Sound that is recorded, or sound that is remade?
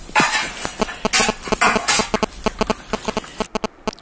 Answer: recorded